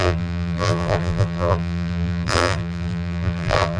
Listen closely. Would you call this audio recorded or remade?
remade